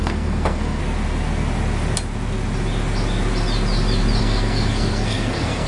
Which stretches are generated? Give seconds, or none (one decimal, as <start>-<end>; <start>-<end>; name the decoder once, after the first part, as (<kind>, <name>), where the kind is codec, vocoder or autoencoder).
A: 0.0-0.8 (codec, SNAC); 4.2-5.7